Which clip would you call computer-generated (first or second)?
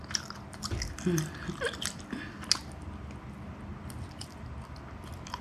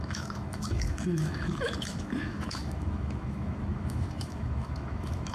second